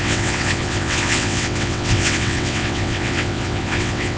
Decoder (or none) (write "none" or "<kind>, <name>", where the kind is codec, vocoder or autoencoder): vocoder, WaveNeXt